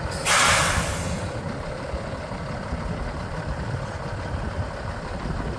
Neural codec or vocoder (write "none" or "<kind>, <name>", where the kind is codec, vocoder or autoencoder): none